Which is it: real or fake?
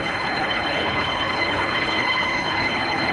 fake